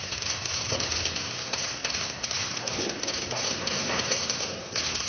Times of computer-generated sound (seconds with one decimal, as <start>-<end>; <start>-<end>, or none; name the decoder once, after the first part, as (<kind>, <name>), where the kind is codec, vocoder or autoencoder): 0.0-5.1 (codec, SNAC)